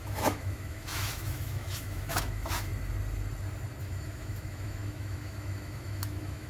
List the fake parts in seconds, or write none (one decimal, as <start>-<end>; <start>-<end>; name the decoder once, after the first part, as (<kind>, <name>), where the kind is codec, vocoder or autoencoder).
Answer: 0.0-2.7 (autoencoder, DAC-VAE); 3.8-6.5